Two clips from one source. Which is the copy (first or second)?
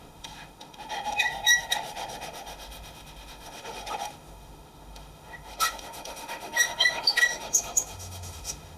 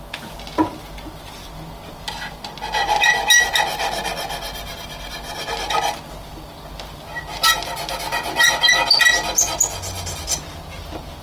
first